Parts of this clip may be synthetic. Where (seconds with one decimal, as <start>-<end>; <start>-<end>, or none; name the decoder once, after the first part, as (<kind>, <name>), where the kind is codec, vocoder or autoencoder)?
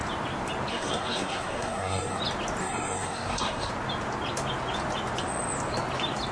0.7-2.2 (codec, SNAC); 2.6-3.7